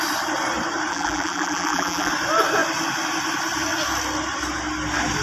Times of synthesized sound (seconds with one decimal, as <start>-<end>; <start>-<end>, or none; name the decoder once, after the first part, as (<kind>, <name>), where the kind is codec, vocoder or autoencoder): 0.9-2.1 (vocoder, BigVGAN v2)